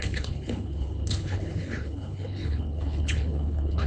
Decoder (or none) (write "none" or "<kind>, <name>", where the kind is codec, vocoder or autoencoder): codec, HILCodec